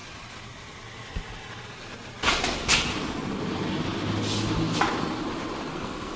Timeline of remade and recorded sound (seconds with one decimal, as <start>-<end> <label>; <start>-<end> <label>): 0.0-5.7 recorded; 5.7-6.2 remade

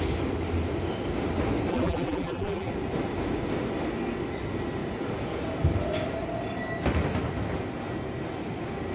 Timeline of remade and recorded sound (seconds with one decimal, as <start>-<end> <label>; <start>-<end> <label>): 0.0-1.7 recorded; 1.7-2.7 remade; 2.7-8.9 recorded

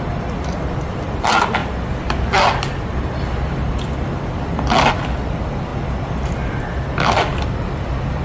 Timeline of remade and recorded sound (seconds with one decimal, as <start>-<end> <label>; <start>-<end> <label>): 0.0-8.2 recorded

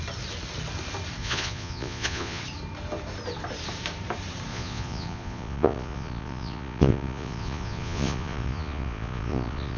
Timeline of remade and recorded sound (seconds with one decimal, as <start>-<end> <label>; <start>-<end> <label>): 0.0-1.2 recorded; 1.2-2.4 remade; 2.4-4.5 recorded; 4.5-9.8 remade

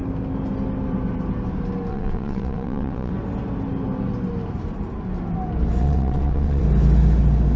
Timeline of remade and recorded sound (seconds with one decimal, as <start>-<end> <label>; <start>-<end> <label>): 0.0-1.9 recorded; 1.9-3.1 remade; 3.1-5.8 recorded; 5.8-6.6 remade; 6.6-7.6 recorded

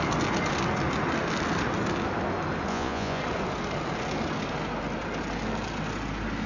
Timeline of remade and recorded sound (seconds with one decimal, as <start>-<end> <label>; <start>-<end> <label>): 0.0-2.7 recorded; 2.7-3.2 remade; 3.2-6.5 recorded

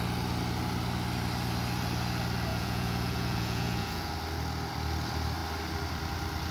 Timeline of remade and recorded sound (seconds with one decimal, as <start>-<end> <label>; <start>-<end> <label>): 0.0-2.5 recorded; 2.5-4.1 remade; 4.1-6.5 recorded

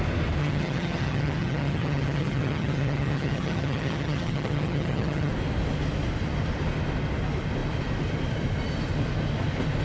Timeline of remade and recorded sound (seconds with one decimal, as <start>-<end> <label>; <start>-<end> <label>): 0.0-0.4 recorded; 0.4-5.3 remade; 5.3-9.8 recorded